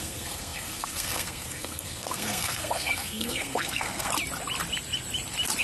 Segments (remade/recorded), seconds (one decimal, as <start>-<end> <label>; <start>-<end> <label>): 0.0-4.1 remade; 4.1-5.6 recorded